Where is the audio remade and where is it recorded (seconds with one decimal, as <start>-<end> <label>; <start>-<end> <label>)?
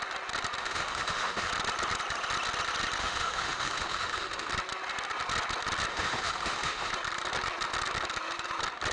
0.0-0.6 recorded; 0.6-1.5 remade; 1.5-3.0 recorded; 3.0-4.5 remade; 4.5-5.9 recorded; 5.9-6.9 remade; 6.9-8.9 recorded